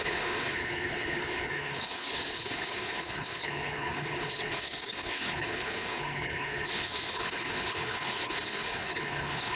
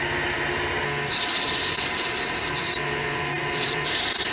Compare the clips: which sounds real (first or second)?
second